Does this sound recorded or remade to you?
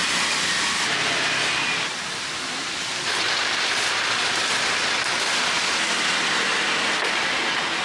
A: recorded